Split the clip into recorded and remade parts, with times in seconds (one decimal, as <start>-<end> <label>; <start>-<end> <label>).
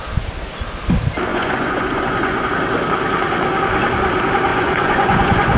0.0-1.3 recorded; 1.3-2.5 remade; 2.5-4.5 recorded; 4.5-5.6 remade